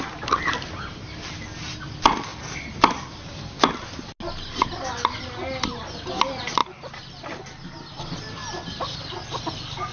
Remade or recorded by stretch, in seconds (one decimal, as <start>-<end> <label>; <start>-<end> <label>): 0.0-9.9 recorded